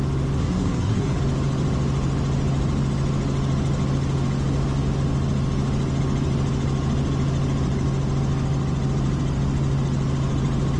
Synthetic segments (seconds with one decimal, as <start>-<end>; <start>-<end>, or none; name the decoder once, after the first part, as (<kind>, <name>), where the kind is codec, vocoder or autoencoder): 0.4-1.2 (codec, SNAC)

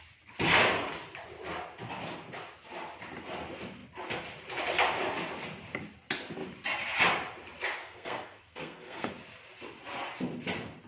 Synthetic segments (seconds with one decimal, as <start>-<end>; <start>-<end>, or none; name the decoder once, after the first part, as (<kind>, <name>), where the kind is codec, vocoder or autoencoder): 7.8-9.1 (codec, SNAC)

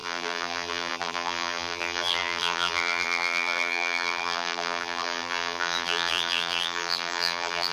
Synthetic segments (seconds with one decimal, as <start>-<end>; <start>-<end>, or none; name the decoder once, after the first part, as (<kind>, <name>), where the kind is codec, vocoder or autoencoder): 0.0-7.7 (vocoder, BigVGAN v2)

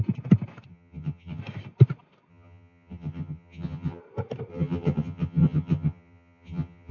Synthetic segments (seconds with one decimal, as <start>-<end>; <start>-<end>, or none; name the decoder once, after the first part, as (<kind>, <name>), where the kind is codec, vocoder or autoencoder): 0.7-1.4 (vocoder, HiFi-GAN); 2.3-4.0; 4.5-6.9

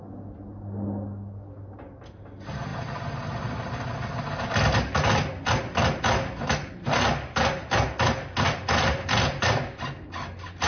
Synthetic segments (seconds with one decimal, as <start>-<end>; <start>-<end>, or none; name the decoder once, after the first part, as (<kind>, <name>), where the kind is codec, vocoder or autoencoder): none

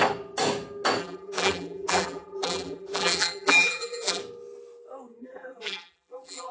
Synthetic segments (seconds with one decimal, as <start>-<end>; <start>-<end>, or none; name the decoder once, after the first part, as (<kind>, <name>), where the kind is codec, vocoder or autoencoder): 1.0-4.2 (vocoder, BigVGAN v2); 5.2-6.5